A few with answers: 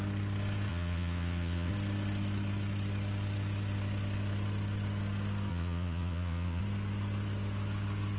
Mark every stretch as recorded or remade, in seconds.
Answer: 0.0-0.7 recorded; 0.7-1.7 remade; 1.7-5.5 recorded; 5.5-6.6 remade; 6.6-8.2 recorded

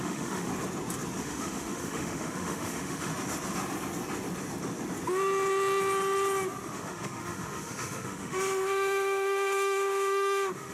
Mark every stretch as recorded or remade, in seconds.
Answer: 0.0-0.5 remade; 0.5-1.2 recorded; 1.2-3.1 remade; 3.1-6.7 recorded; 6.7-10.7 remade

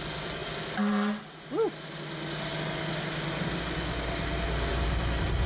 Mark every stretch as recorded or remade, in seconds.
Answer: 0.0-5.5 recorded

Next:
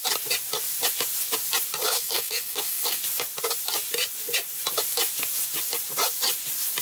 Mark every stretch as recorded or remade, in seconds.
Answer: 0.0-1.9 recorded; 1.9-3.0 remade; 3.0-6.8 recorded

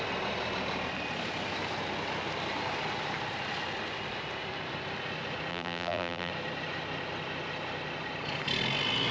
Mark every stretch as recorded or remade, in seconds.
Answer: 0.0-5.5 recorded; 5.5-6.3 remade; 6.3-9.1 recorded

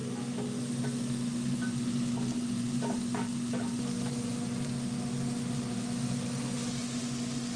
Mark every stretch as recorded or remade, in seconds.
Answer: 0.0-7.6 recorded

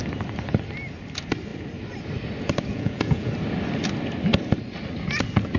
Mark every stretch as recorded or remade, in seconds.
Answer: 0.0-2.7 recorded; 2.7-3.3 remade; 3.3-5.6 recorded

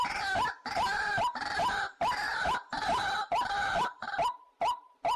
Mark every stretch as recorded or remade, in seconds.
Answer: 0.0-5.2 remade